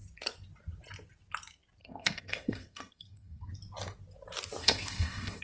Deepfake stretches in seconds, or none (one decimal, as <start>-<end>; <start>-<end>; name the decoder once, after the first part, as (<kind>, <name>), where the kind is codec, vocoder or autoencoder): 1.8-3.5 (codec, SNAC); 4.6-5.4